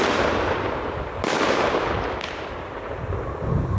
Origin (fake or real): real